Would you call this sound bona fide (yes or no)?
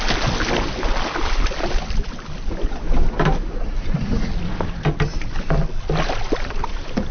yes